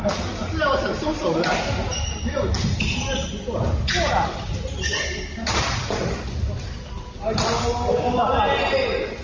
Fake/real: real